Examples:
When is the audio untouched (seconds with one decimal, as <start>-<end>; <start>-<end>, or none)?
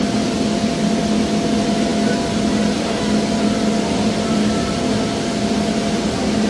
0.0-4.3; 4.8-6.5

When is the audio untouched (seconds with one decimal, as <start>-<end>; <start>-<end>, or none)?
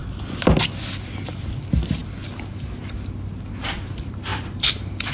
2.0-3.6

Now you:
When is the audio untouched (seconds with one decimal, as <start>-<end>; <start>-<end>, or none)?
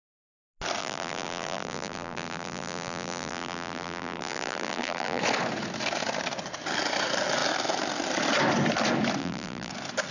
0.0-0.8; 5.2-9.2; 9.7-10.1